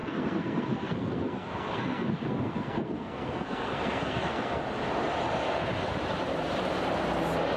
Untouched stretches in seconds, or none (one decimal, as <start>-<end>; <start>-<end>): 4.6-7.6